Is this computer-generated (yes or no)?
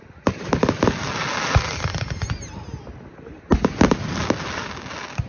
no